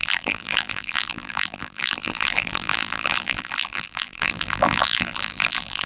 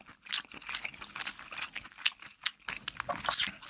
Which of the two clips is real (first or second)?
second